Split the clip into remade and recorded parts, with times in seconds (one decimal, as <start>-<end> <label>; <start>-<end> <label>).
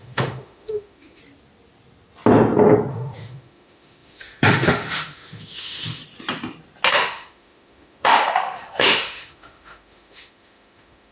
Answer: 0.0-1.2 remade; 1.2-2.9 recorded; 2.9-6.0 remade; 6.0-6.9 recorded; 6.9-11.1 remade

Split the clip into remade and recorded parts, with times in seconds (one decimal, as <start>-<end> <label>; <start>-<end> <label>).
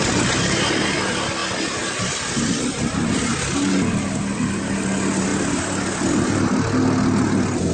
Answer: 0.0-7.7 recorded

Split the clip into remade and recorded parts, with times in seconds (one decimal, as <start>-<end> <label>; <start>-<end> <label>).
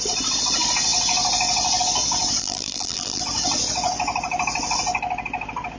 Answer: 0.0-2.4 recorded; 2.4-3.2 remade; 3.2-5.8 recorded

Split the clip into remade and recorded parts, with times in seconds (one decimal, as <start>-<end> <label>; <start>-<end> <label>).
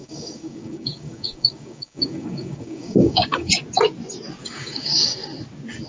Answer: 0.0-3.5 remade; 3.5-4.4 recorded; 4.4-5.0 remade; 5.0-5.9 recorded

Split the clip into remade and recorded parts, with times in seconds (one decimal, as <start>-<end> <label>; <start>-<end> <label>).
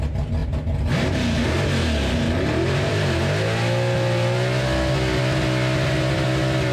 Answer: 0.0-6.7 recorded